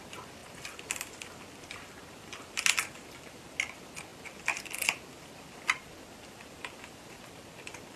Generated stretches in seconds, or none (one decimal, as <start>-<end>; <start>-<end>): none